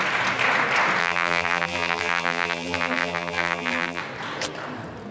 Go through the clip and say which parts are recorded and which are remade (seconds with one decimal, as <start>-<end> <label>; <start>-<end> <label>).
0.0-1.0 recorded; 1.0-4.0 remade; 4.0-5.1 recorded

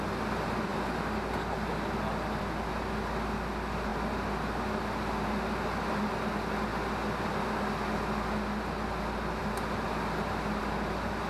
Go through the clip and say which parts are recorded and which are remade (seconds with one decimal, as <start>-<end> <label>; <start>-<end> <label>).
0.0-11.3 recorded

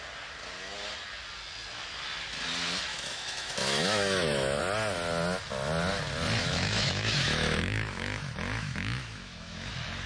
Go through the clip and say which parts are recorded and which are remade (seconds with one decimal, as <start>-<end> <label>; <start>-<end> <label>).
0.0-2.9 recorded; 2.9-4.6 remade; 4.6-6.4 recorded; 6.4-9.7 remade; 9.7-10.1 recorded

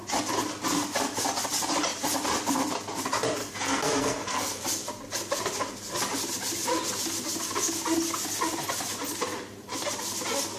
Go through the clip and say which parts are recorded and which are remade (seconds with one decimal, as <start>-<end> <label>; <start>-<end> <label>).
0.0-3.4 recorded; 3.4-4.6 remade; 4.6-10.6 recorded

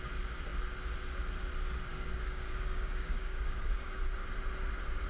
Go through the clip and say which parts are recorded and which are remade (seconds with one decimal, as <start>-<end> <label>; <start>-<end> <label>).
0.0-1.9 recorded; 1.9-4.0 remade; 4.0-5.1 recorded

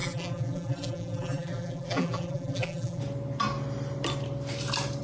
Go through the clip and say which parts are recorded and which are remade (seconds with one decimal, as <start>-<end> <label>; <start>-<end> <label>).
0.0-3.0 remade; 3.0-5.0 recorded

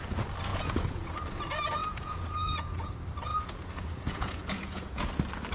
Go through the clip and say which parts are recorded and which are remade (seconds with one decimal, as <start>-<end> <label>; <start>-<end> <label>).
0.0-0.5 recorded; 0.5-1.1 remade; 1.1-1.8 recorded; 1.8-2.9 remade; 2.9-3.3 recorded; 3.3-5.1 remade; 5.1-5.5 recorded

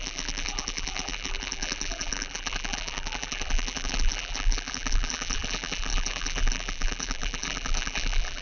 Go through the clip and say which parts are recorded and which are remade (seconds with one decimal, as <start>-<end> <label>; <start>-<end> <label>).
0.0-8.4 remade